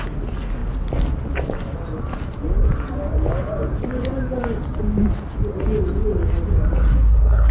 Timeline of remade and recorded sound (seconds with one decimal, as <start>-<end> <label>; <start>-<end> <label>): 0.0-6.9 recorded; 6.9-7.5 remade